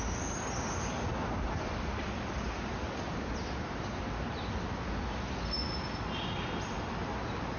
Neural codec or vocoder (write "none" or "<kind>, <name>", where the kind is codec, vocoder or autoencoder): none